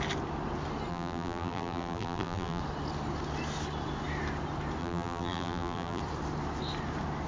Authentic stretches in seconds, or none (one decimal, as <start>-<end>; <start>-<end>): 0.0-0.9; 2.6-4.8; 6.0-7.3